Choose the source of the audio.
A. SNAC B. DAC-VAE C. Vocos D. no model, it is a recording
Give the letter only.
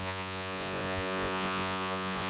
C